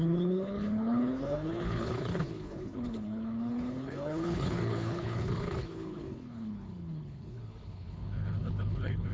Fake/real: fake